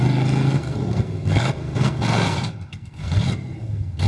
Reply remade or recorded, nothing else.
remade